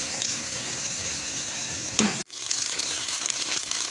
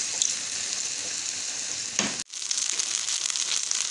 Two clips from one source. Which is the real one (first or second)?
second